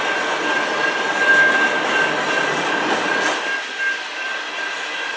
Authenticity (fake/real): real